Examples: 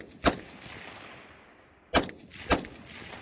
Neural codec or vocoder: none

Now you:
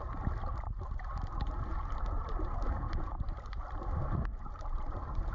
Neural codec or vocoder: none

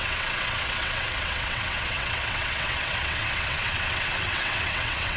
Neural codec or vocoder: vocoder, WaveNeXt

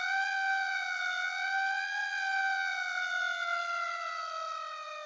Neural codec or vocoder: vocoder, WaveNeXt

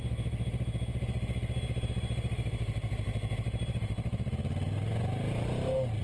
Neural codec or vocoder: none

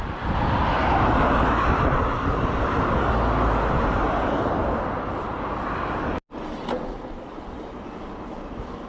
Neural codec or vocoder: none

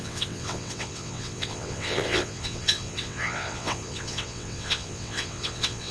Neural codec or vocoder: vocoder, WaveNeXt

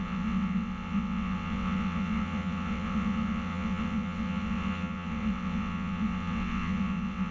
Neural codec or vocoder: vocoder, WaveNeXt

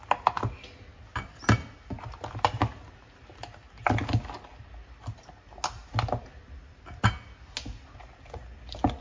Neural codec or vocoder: none